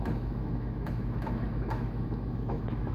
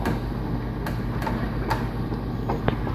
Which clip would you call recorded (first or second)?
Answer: second